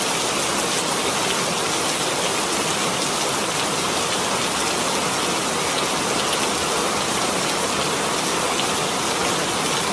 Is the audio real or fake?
real